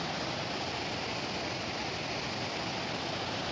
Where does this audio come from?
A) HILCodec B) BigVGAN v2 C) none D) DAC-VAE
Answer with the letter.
C